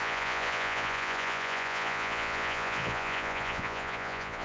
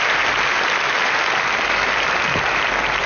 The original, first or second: second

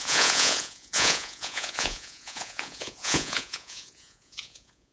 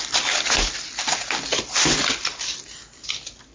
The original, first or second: second